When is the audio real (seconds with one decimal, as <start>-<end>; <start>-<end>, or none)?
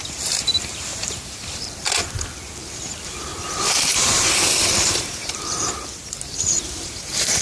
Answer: 0.0-0.7; 1.7-3.3